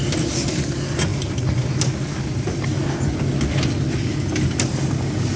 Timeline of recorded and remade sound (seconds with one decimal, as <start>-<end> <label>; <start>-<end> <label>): 0.0-5.4 recorded